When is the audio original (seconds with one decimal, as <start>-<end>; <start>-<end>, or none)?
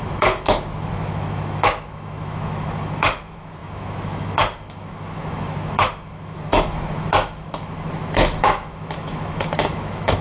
none